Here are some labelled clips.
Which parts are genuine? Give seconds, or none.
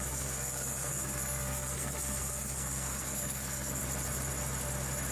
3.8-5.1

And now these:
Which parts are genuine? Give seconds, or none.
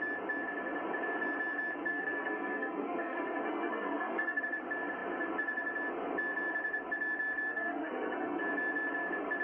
0.0-1.9; 4.4-7.5; 8.4-9.4